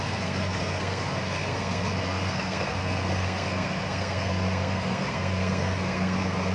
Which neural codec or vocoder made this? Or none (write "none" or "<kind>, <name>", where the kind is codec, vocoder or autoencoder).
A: codec, SNAC